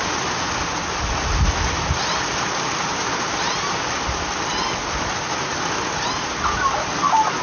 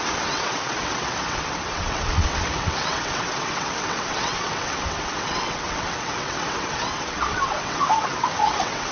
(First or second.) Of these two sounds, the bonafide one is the first